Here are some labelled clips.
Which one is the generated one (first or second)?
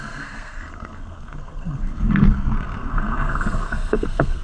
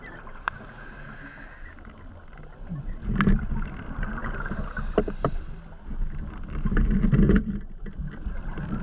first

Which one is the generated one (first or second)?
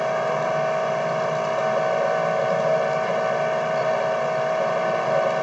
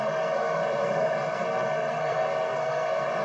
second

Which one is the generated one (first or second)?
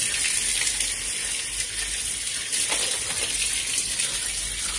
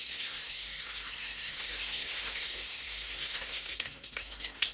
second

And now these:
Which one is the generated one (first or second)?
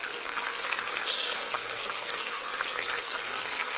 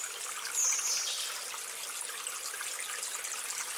first